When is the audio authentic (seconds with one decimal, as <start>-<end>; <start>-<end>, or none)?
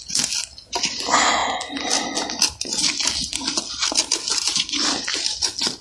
0.0-5.8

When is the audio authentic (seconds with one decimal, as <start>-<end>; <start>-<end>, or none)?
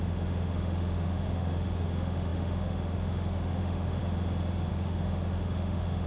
4.0-4.7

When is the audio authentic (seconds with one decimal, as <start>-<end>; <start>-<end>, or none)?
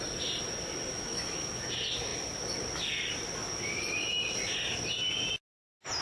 0.0-0.9; 1.7-6.0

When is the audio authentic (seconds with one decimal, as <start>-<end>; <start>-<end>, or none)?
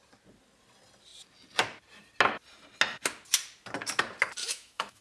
0.0-4.4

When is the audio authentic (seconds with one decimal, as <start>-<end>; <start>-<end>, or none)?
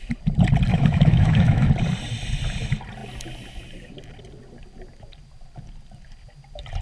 0.0-0.7; 1.7-6.8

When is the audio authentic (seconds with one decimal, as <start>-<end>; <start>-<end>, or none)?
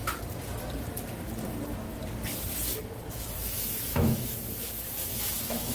0.0-3.1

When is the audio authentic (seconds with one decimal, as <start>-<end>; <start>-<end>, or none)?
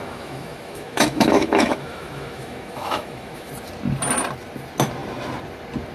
3.5-5.9